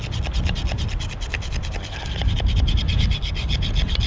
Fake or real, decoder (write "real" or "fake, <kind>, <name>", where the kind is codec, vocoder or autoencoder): real